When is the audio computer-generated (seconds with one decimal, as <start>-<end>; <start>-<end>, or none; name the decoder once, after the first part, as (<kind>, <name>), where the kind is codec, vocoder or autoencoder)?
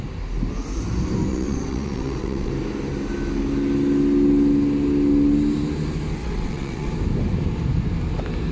1.3-2.5 (vocoder, WaveNeXt); 6.2-6.9